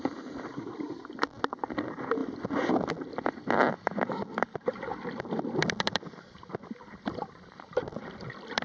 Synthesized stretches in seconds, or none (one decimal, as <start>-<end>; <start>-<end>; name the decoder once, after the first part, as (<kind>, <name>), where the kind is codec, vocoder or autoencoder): 2.2-2.7 (vocoder, BigVGAN v2); 4.9-8.1